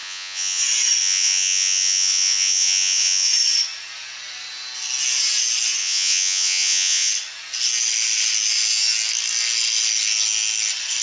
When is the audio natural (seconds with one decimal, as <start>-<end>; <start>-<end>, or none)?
0.6-1.0; 3.3-5.8; 7.1-11.0

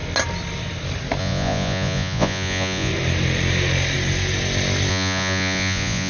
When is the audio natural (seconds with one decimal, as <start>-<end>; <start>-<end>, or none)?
0.0-1.2; 2.9-4.9

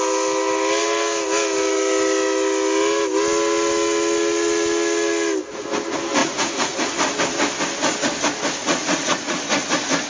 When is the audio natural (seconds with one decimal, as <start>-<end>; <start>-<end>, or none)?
0.0-6.2; 6.9-8.6; 9.4-10.1

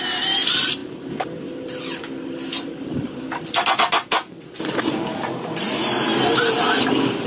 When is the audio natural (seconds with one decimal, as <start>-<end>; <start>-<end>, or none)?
0.0-7.3

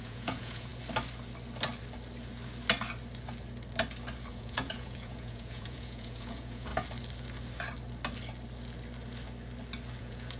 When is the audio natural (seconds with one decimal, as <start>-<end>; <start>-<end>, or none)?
0.7-4.3; 6.7-10.0